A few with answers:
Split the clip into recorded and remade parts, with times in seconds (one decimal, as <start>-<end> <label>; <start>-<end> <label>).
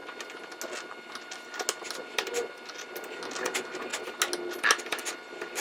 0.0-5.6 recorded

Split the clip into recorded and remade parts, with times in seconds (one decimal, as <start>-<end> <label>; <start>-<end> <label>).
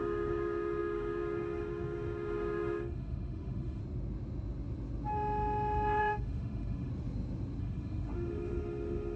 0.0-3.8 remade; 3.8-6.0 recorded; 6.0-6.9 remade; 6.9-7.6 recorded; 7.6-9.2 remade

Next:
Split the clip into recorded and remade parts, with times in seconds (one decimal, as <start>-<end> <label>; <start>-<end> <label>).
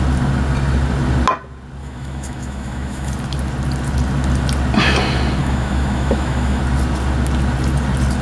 0.0-1.8 recorded; 1.8-3.1 remade; 3.1-5.4 recorded; 5.4-6.6 remade; 6.6-8.2 recorded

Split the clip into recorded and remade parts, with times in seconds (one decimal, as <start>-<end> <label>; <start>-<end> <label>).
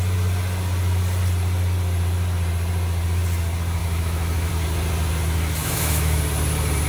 0.0-3.8 recorded; 3.8-4.5 remade; 4.5-5.6 recorded; 5.6-6.2 remade; 6.2-6.9 recorded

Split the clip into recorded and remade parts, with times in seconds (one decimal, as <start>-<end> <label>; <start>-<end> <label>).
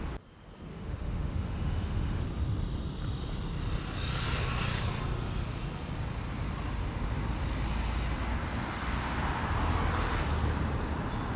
0.0-0.7 recorded; 0.7-2.2 remade; 2.2-11.4 recorded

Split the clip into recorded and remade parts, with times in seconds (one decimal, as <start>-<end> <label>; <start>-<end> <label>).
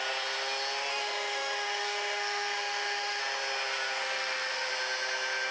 0.0-0.9 recorded; 0.9-3.2 remade; 3.2-4.0 recorded; 4.0-4.7 remade; 4.7-5.5 recorded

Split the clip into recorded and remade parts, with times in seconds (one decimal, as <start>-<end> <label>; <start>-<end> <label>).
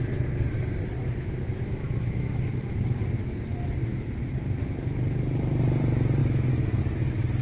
0.0-1.0 recorded; 1.0-2.8 remade; 2.8-3.9 recorded; 3.9-4.4 remade; 4.4-6.2 recorded; 6.2-6.8 remade; 6.8-7.4 recorded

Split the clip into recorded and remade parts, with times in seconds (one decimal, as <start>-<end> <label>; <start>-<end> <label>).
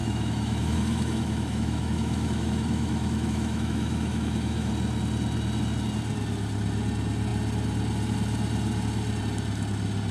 0.0-4.7 remade; 4.7-10.1 recorded